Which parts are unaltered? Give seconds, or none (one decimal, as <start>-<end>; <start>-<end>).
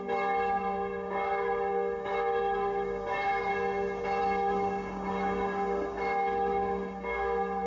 3.5-4.2